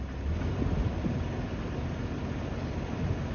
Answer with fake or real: real